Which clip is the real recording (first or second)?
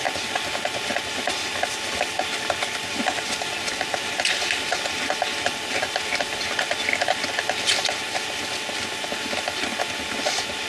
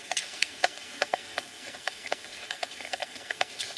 first